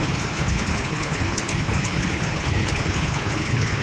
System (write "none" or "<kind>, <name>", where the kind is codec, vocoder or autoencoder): codec, HILCodec